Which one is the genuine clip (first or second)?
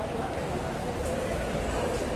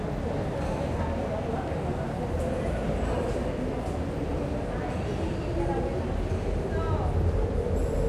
second